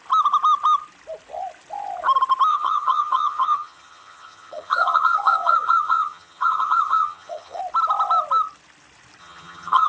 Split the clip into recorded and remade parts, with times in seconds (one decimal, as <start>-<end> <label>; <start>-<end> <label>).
0.0-2.5 recorded; 2.5-7.6 remade; 7.6-9.2 recorded; 9.2-9.9 remade